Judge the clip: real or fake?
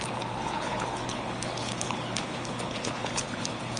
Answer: fake